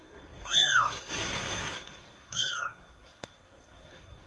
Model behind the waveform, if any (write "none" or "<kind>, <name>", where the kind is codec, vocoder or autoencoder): codec, SNAC